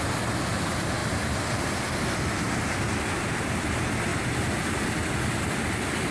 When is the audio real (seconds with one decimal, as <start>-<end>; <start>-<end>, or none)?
0.0-6.1